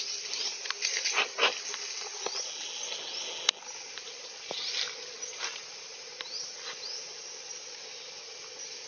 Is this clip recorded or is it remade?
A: recorded